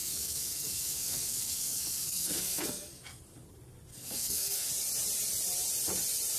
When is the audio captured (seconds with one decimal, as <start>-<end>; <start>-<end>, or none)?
3.2-3.9; 4.7-6.4